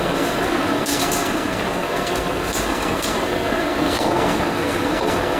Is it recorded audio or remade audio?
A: remade